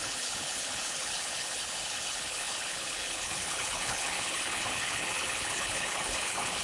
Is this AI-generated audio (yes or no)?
yes